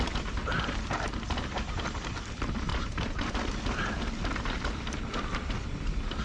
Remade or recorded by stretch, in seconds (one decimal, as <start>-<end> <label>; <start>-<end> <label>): 0.0-2.7 recorded; 2.7-3.3 remade; 3.3-6.2 recorded